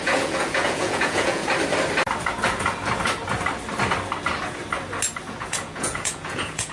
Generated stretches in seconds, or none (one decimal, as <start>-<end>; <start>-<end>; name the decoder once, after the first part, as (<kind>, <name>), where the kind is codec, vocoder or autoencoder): 0.0-1.4 (vocoder, Vocos); 5.4-6.7